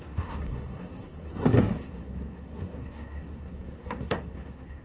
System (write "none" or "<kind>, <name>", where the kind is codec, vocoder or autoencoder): codec, SNAC